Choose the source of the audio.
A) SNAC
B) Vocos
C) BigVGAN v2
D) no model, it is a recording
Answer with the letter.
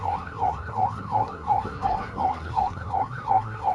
A